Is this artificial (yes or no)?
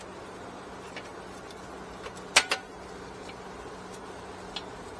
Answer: no